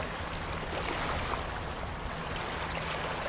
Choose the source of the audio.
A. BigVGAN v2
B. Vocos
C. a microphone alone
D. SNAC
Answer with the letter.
C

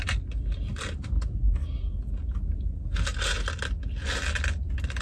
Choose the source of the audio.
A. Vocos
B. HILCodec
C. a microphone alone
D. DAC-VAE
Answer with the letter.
C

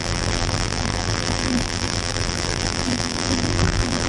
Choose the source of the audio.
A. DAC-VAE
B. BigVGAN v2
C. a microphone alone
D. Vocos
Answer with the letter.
B